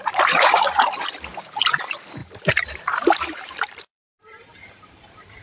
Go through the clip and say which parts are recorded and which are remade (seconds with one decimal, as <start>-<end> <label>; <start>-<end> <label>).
0.0-5.4 remade